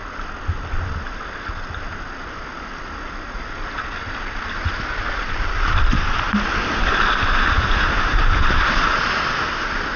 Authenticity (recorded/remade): recorded